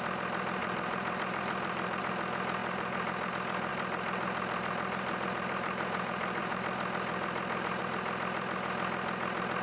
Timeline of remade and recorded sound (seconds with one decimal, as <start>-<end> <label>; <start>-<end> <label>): 0.0-0.6 recorded; 0.6-2.0 remade; 2.0-2.6 recorded; 2.6-3.3 remade; 3.3-3.7 recorded; 3.7-7.8 remade; 7.8-9.6 recorded